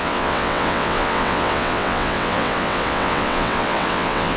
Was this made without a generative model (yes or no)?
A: no